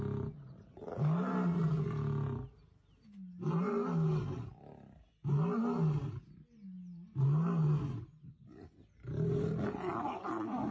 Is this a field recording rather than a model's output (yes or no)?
yes